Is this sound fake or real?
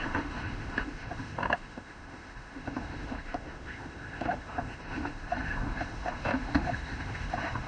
fake